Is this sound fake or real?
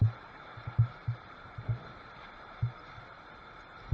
fake